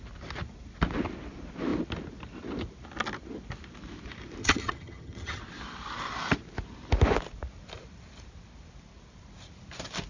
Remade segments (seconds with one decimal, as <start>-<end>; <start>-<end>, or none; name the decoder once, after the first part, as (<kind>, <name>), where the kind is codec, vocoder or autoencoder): 4.4-5.4 (vocoder, HiFi-GAN)